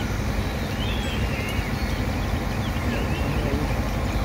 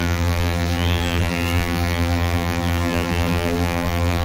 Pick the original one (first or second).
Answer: first